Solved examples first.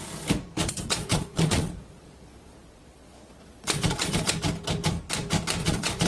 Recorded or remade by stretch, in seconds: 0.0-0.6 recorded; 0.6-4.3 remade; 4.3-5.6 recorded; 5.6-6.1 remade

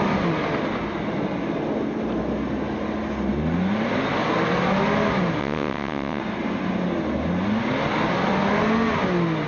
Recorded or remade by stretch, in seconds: 0.0-5.4 recorded; 5.4-6.2 remade; 6.2-9.5 recorded

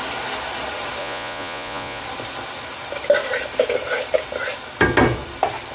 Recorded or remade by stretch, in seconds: 0.0-1.0 recorded; 1.0-2.0 remade; 2.0-5.7 recorded

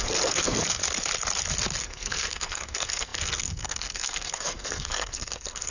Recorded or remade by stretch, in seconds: 0.0-0.8 remade; 0.8-1.8 recorded; 1.8-5.7 remade

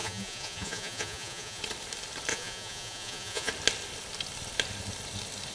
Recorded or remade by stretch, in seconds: 0.0-1.6 remade; 1.6-2.3 recorded; 2.3-3.5 remade; 3.5-5.5 recorded